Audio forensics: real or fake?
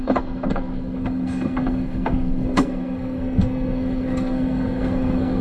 fake